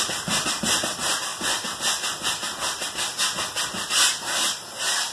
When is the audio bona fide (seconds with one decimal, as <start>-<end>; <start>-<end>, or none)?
0.0-5.1